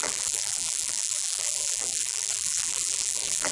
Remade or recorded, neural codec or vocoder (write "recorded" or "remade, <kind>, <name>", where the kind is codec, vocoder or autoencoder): remade, vocoder, BigVGAN v2